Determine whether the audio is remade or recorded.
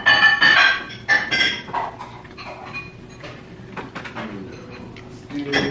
recorded